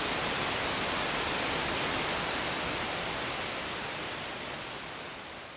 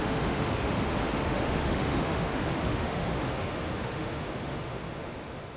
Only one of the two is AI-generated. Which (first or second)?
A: second